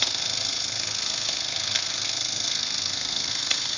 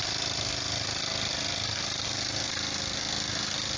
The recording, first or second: second